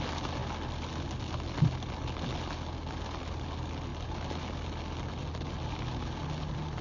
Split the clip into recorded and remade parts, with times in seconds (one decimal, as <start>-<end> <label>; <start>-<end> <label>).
0.0-6.8 recorded